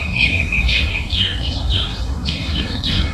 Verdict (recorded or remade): remade